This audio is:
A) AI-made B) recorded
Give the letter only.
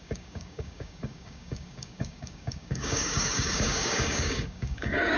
A